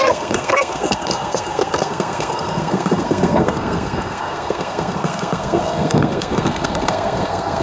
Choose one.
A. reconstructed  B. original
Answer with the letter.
A